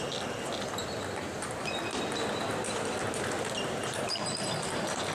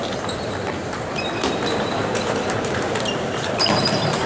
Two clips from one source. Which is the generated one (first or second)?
second